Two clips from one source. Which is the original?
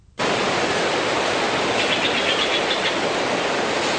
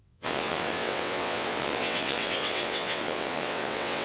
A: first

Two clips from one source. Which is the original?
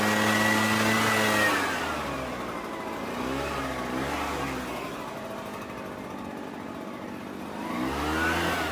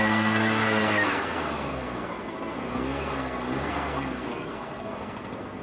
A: first